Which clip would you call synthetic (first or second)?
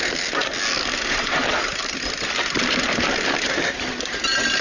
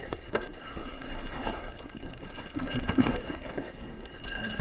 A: second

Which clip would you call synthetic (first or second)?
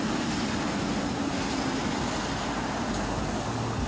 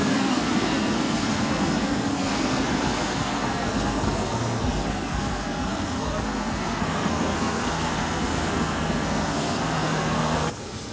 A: second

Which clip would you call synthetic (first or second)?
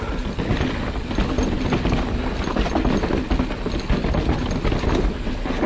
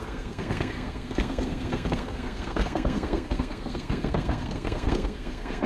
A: second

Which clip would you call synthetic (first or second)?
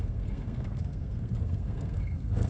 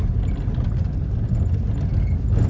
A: first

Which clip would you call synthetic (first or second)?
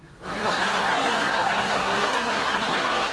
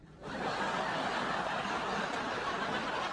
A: first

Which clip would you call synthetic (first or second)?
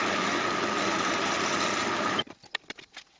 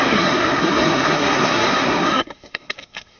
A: second